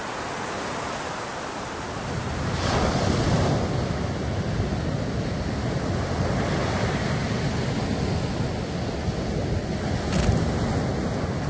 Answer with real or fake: real